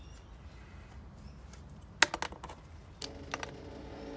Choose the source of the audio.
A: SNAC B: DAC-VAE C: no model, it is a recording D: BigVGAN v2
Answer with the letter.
C